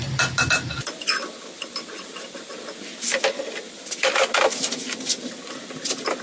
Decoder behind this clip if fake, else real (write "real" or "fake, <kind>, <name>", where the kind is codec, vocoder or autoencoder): real